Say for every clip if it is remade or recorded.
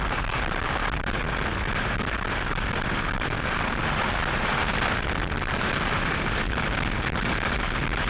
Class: remade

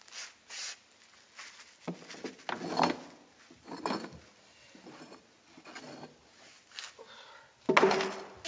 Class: recorded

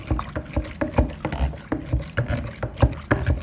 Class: recorded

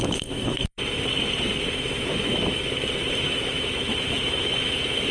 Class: remade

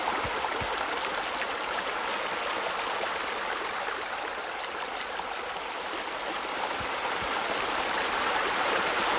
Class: recorded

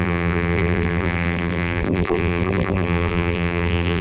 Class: remade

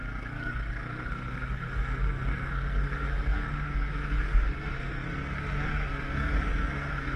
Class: remade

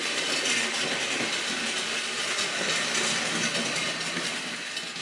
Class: recorded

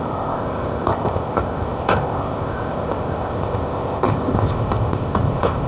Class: remade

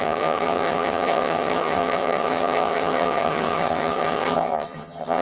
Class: remade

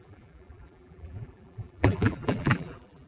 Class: remade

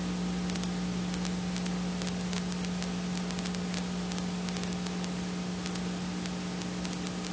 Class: recorded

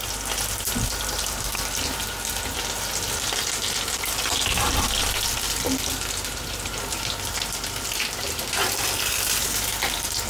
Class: recorded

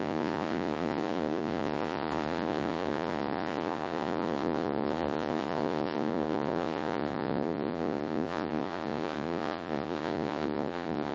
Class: remade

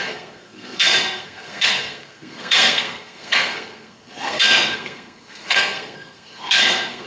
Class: remade